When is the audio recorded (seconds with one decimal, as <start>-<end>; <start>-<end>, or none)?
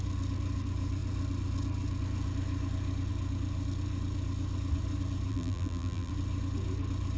0.0-5.3; 6.1-7.2